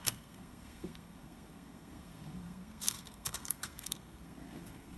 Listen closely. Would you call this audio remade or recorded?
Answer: remade